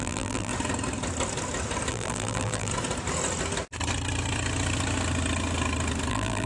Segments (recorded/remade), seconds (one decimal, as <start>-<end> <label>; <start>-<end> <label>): 0.0-0.5 remade; 0.5-1.9 recorded; 1.9-2.7 remade; 2.7-6.1 recorded; 6.1-6.5 remade